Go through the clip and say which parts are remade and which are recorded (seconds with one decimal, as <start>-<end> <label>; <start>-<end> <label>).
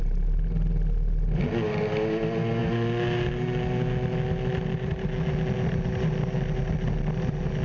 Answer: 0.0-7.6 recorded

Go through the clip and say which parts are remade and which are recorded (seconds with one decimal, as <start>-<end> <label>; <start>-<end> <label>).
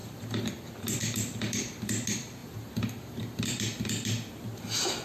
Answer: 0.0-0.6 remade; 0.6-1.0 recorded; 1.0-1.6 remade; 1.6-2.4 recorded; 2.4-4.3 remade; 4.3-5.0 recorded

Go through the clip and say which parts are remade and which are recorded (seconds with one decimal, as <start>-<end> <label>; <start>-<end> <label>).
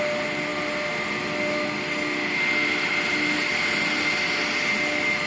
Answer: 0.0-5.3 recorded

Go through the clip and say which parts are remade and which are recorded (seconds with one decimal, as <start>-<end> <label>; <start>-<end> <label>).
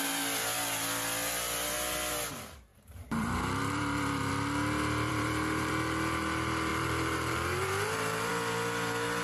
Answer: 0.0-2.7 recorded; 2.7-4.3 remade; 4.3-5.1 recorded; 5.1-5.7 remade; 5.7-6.7 recorded; 6.7-8.3 remade; 8.3-9.2 recorded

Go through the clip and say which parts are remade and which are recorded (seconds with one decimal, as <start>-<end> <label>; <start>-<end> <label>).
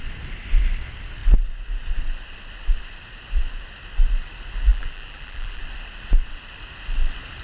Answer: 0.0-4.7 recorded; 4.7-5.6 remade; 5.6-7.4 recorded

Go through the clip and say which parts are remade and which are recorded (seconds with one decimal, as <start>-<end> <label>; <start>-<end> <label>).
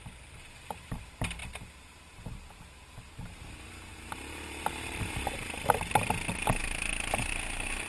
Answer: 0.0-1.4 recorded; 1.4-3.0 remade; 3.0-3.9 recorded; 3.9-5.1 remade; 5.1-7.9 recorded